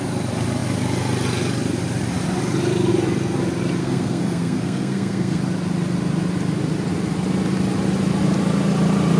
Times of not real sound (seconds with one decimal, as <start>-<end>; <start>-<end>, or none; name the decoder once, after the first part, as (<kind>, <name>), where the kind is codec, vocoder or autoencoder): 3.8-5.4 (codec, SNAC)